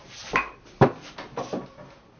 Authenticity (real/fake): real